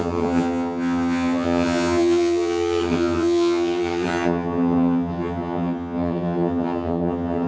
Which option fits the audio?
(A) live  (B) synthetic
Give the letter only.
B